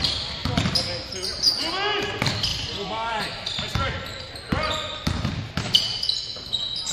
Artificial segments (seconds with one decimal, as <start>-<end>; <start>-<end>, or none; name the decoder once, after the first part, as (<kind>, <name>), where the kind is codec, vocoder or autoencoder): none